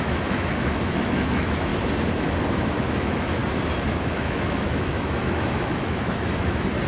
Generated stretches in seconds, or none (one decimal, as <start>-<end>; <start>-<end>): 0.0-1.7; 2.5-3.4; 3.9-6.9